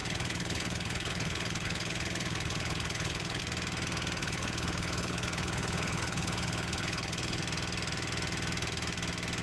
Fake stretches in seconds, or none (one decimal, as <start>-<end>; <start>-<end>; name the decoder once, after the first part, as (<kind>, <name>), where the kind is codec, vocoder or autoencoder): 0.0-3.4 (codec, HILCodec); 4.2-7.4